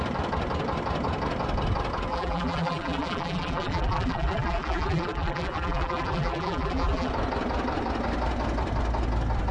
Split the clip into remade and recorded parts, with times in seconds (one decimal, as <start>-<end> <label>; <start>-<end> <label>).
0.0-2.1 recorded; 2.1-7.1 remade; 7.1-9.5 recorded